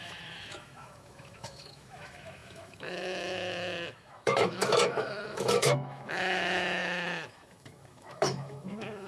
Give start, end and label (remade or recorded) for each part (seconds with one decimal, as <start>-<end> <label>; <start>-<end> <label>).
0.0-9.1 remade